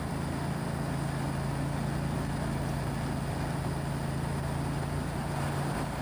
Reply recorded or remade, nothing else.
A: recorded